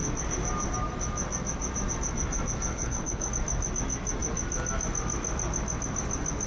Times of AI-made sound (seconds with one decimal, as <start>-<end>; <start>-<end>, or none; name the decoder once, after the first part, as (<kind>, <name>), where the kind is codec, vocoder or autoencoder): 2.7-3.3 (codec, HILCodec)